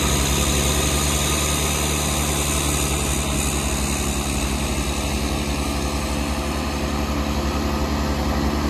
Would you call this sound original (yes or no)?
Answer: yes